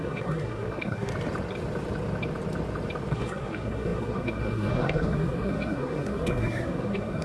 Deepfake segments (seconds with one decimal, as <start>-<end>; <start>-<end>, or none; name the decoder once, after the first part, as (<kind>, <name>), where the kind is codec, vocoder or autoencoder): 0.0-1.1 (codec, SNAC); 3.1-7.2